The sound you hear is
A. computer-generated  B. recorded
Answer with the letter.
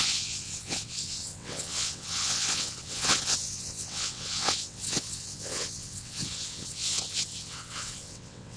A